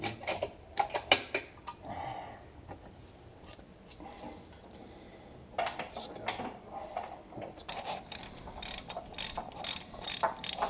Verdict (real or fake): real